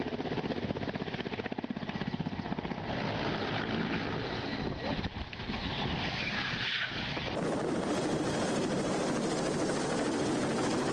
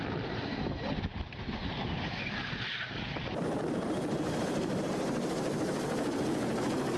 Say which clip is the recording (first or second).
first